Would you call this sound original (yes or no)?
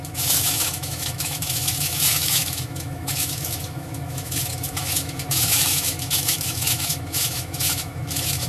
no